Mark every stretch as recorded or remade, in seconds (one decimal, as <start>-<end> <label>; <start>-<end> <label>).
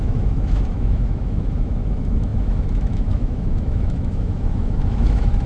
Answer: 0.0-5.5 remade